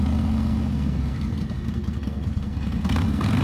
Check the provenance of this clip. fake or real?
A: fake